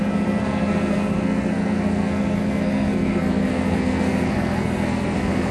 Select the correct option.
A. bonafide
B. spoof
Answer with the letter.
B